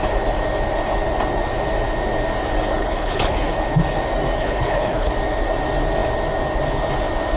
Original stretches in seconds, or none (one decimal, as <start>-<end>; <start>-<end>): 0.0-2.8; 3.5-4.4; 5.1-7.4